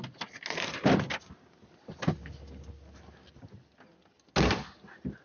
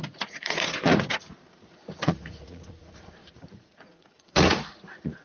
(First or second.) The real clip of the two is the first